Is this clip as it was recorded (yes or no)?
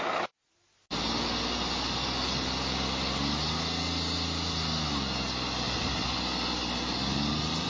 yes